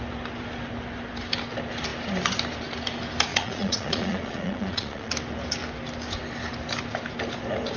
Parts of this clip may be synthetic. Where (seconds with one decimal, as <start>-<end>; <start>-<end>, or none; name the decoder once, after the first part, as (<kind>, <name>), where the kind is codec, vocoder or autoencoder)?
3.3-5.1 (vocoder, Vocos)